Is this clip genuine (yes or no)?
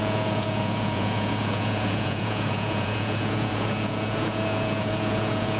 no